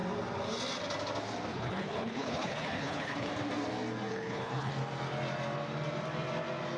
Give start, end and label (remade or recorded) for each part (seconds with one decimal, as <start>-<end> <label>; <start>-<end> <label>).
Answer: 0.0-1.5 recorded; 1.5-3.3 remade; 3.3-4.1 recorded; 4.1-4.7 remade; 4.7-6.8 recorded